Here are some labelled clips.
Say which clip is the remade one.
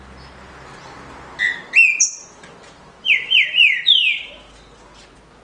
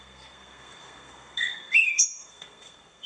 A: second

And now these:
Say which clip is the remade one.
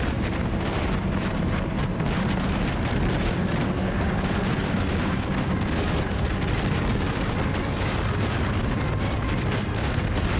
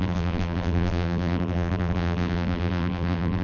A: second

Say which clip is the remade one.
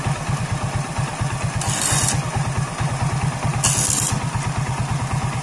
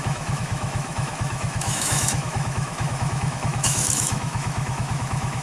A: second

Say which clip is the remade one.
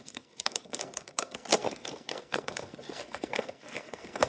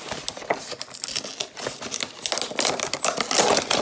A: first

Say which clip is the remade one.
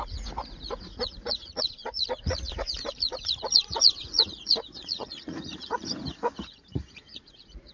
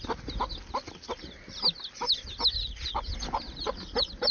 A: first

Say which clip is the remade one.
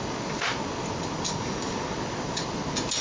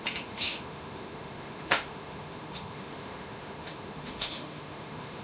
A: second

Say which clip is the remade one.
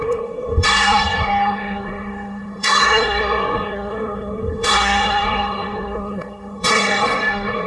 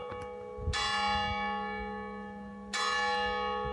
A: first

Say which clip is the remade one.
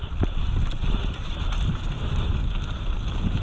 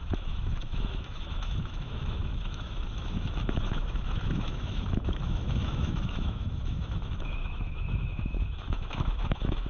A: second